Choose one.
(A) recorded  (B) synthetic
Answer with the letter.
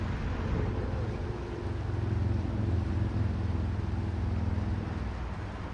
A